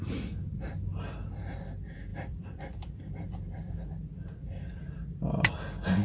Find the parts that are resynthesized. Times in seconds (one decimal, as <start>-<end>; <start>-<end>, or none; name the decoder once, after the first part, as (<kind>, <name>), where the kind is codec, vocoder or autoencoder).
2.1-3.8 (vocoder, BigVGAN v2)